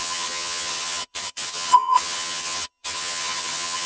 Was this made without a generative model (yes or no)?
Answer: no